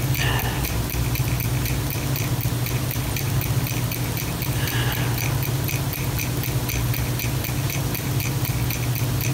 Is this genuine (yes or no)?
yes